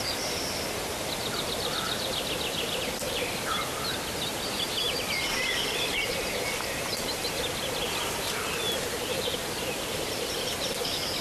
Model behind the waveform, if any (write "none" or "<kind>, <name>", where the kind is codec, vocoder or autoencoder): vocoder, BigVGAN v2